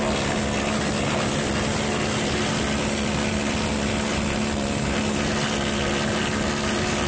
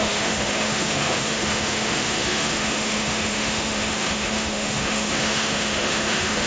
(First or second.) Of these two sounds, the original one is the first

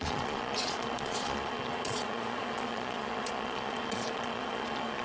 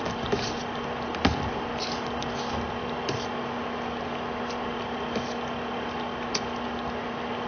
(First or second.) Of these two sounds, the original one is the second